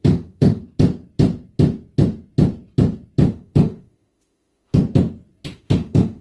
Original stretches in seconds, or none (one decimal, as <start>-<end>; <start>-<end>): 0.6-3.3; 4.8-5.5